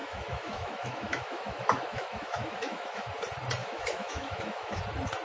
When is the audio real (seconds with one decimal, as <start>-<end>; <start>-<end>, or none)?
3.1-3.6; 4.8-5.2